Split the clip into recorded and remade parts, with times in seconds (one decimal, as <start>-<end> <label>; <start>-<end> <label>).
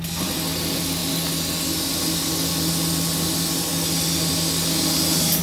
0.0-5.4 recorded